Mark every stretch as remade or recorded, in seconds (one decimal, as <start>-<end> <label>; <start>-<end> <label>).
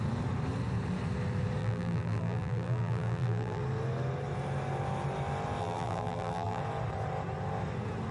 0.0-1.6 recorded; 1.6-3.6 remade; 3.6-5.6 recorded; 5.6-6.6 remade; 6.6-8.1 recorded